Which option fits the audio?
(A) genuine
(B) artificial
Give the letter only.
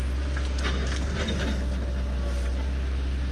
A